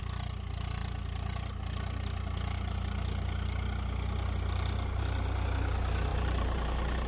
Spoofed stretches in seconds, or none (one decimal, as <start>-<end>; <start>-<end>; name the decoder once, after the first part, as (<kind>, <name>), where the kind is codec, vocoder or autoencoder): 6.1-7.1 (vocoder, BigVGAN v2)